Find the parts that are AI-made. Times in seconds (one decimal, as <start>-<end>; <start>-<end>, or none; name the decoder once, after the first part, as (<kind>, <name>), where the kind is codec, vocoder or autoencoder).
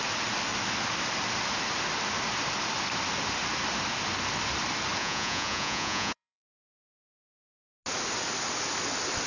5.0-7.3 (vocoder, Vocos)